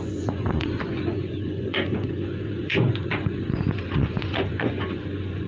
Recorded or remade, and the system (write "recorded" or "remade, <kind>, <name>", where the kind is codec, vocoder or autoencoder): remade, vocoder, Vocos